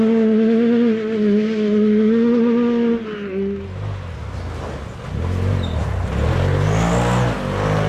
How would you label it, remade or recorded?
recorded